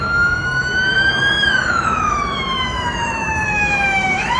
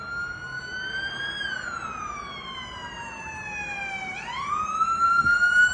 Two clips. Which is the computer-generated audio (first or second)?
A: first